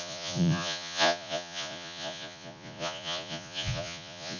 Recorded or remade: remade